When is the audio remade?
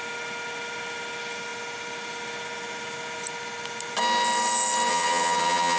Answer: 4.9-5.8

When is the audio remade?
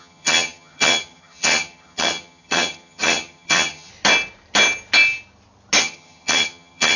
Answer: 0.0-3.9; 5.8-7.0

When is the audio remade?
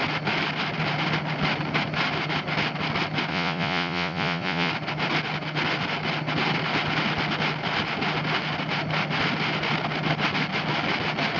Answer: 3.3-4.7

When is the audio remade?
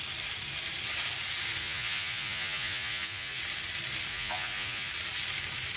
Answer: 1.6-3.4; 4.1-4.9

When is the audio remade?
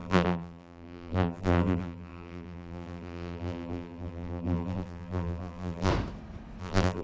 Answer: 0.0-5.9; 6.6-7.0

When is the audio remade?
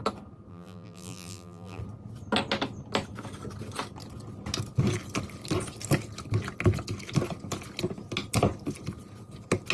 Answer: 0.5-1.8